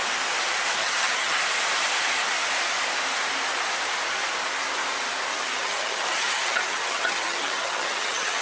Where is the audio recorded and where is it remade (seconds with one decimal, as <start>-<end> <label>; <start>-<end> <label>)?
0.0-0.8 recorded; 0.8-1.4 remade; 1.4-5.3 recorded; 5.3-8.4 remade